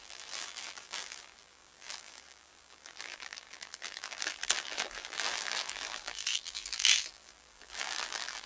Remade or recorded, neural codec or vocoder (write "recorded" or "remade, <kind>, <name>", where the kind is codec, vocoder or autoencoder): remade, vocoder, BigVGAN v2